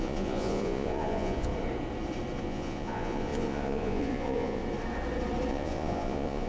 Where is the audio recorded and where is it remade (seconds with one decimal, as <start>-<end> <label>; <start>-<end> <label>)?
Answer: 0.0-1.5 remade; 1.5-2.4 recorded; 2.4-4.6 remade; 4.6-5.5 recorded; 5.5-6.5 remade